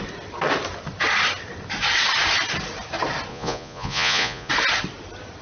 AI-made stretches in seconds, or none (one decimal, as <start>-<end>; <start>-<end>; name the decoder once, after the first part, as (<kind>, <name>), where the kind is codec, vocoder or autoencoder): 3.3-4.5 (vocoder, Vocos)